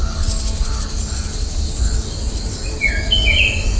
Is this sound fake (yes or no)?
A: no